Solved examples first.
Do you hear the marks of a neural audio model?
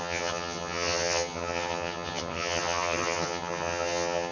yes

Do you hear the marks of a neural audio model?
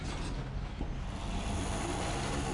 no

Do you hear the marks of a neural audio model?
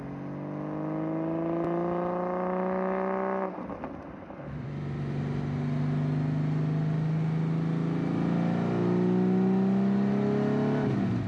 no